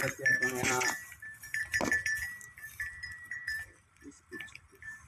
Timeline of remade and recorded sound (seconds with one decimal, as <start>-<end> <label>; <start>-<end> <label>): 0.0-1.0 remade; 1.0-2.8 recorded; 2.8-5.1 remade